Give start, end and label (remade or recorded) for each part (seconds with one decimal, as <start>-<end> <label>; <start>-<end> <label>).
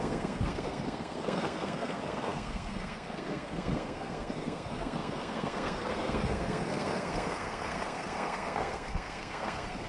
0.0-9.9 remade